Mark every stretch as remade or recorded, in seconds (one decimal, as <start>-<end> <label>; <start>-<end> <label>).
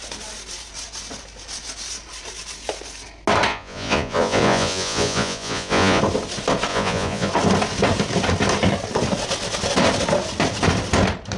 0.0-3.5 recorded; 3.5-6.0 remade; 6.0-6.7 recorded; 6.7-7.3 remade; 7.3-11.4 recorded